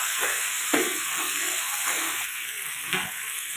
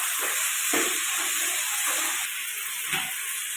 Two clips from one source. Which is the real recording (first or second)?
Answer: second